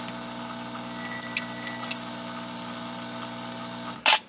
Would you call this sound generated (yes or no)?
no